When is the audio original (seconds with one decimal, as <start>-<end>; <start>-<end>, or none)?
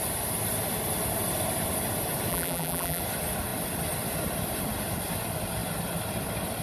0.0-2.3; 3.0-6.6